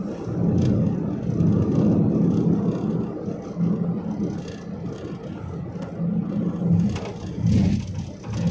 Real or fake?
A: real